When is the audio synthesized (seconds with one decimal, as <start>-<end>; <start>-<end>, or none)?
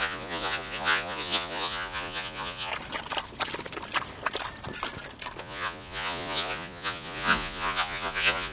0.0-2.7; 5.4-8.5